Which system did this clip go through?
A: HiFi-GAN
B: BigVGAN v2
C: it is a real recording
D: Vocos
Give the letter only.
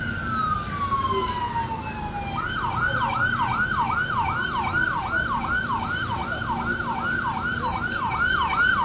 C